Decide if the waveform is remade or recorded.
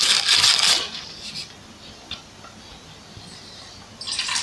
recorded